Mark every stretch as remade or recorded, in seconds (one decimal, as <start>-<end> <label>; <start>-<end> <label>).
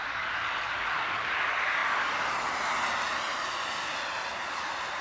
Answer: 0.0-1.4 remade; 1.4-5.0 recorded